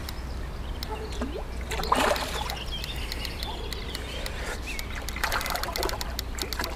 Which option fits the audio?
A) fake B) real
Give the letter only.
B